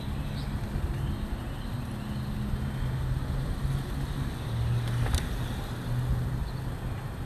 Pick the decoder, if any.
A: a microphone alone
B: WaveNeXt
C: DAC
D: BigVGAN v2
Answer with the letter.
A